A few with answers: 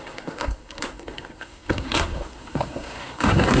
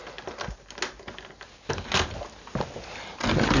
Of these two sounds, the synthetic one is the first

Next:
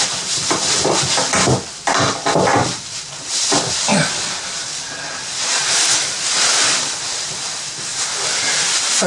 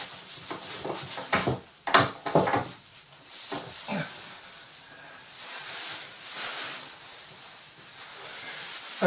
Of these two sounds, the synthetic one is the first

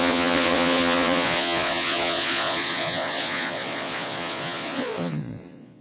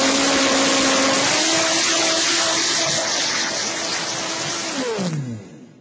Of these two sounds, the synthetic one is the first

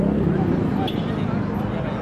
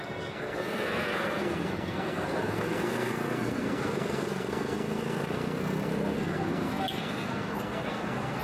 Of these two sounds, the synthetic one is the second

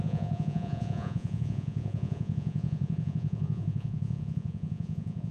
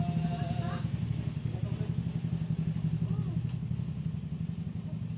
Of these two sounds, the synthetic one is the first